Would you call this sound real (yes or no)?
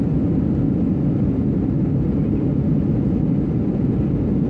yes